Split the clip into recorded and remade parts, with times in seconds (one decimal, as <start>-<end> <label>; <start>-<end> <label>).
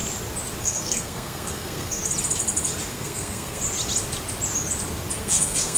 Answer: 0.0-0.6 recorded; 0.6-2.0 remade; 2.0-2.9 recorded; 2.9-3.6 remade; 3.6-5.2 recorded; 5.2-5.8 remade